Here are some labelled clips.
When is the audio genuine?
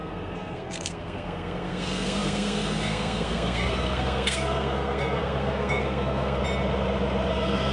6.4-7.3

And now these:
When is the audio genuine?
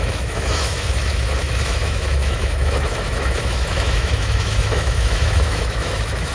none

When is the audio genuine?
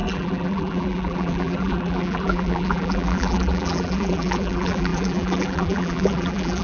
none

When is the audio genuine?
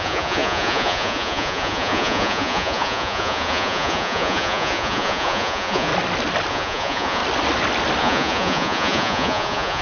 5.9-6.5; 7.2-8.0